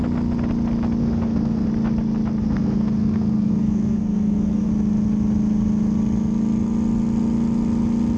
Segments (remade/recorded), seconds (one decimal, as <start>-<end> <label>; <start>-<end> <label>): 0.0-1.0 recorded; 1.0-1.7 remade; 1.7-2.4 recorded; 2.4-4.7 remade; 4.7-8.2 recorded